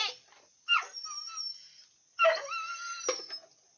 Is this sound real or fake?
real